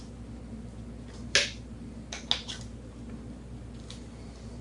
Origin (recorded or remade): recorded